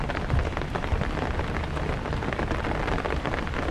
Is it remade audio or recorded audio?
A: recorded